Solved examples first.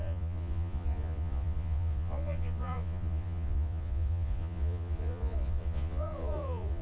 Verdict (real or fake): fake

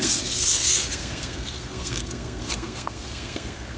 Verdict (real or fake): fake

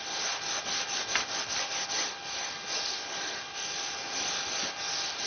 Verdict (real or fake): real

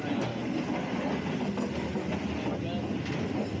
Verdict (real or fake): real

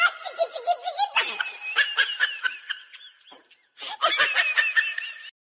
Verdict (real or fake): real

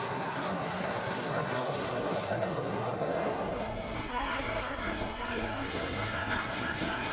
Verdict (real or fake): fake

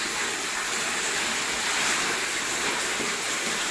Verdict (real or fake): real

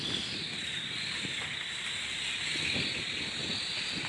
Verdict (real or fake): real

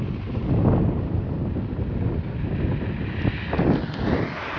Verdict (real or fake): real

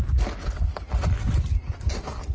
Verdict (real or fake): real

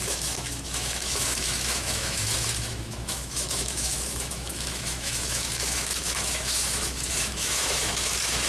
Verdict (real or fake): fake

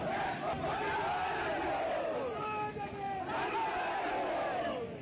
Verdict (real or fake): real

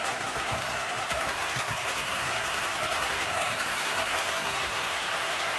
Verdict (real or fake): fake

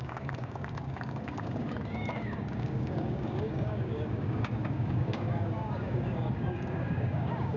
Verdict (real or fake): fake